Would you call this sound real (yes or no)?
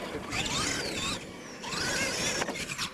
yes